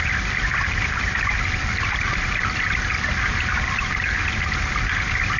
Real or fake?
real